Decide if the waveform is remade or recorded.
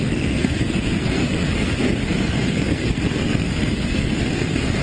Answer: remade